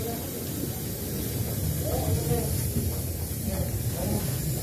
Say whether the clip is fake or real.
real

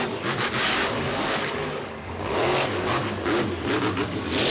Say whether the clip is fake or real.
fake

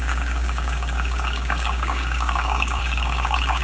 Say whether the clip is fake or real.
fake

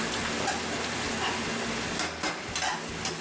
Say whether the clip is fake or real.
real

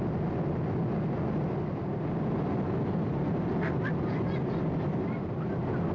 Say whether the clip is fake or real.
real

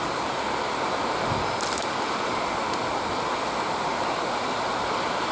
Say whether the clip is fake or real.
real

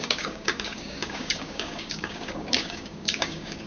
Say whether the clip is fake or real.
fake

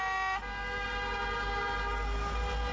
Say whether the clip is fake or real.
real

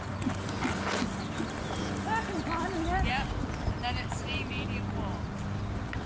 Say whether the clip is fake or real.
real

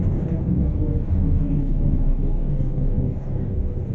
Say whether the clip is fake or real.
fake